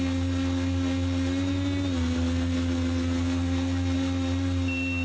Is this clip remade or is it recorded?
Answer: recorded